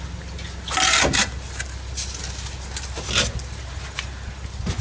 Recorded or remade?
recorded